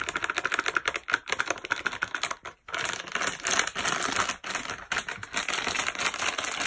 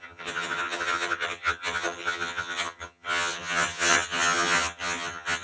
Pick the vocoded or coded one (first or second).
second